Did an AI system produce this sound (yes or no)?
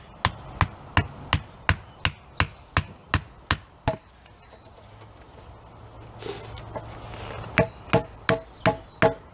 no